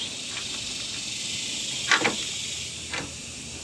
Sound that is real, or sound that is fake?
real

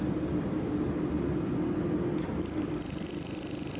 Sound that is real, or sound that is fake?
real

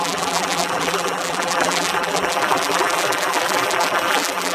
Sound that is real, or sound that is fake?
fake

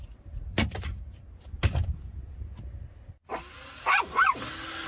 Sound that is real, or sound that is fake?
real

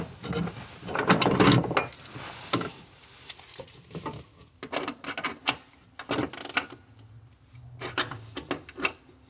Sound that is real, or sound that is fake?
real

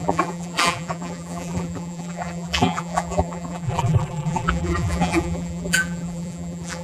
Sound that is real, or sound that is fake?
fake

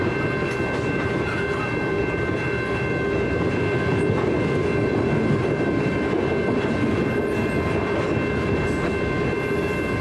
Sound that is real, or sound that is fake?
real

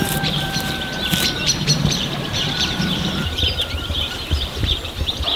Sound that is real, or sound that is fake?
fake